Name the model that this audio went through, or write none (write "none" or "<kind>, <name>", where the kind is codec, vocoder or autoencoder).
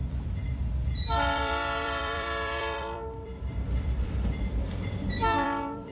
vocoder, BigVGAN v2